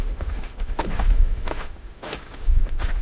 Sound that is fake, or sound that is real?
fake